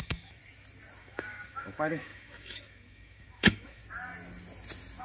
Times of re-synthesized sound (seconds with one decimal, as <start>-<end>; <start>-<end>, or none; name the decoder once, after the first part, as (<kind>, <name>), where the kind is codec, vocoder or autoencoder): 0.0-0.4 (autoencoder, DAC-VAE); 1.0-3.8